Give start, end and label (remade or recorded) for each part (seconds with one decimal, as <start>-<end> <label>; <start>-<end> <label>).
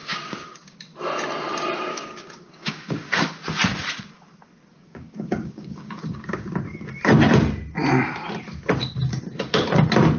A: 0.0-0.8 remade; 0.8-1.9 recorded; 1.9-3.1 remade; 3.1-4.7 recorded; 4.7-6.5 remade; 6.5-10.2 recorded